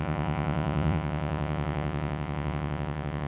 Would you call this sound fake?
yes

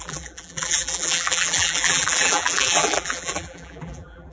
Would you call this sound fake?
yes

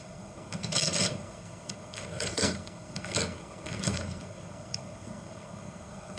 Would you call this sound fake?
yes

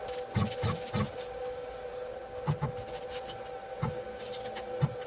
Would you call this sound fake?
no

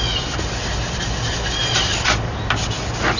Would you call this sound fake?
no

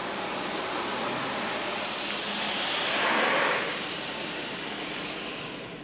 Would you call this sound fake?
no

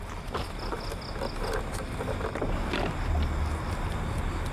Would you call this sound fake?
no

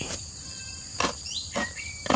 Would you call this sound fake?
yes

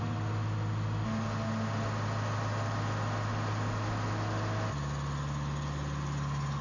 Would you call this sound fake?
no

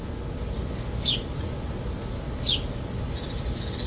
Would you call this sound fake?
no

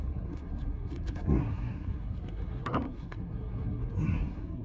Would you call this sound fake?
yes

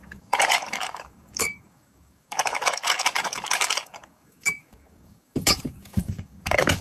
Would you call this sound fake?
yes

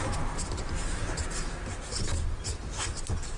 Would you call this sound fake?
no